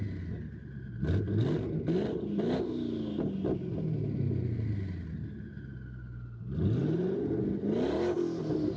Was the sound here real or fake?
real